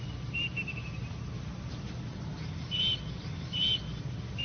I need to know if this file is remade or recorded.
recorded